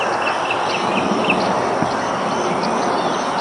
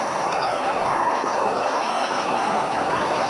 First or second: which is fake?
second